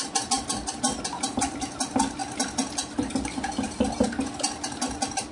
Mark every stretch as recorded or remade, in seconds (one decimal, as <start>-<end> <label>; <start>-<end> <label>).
0.0-5.3 recorded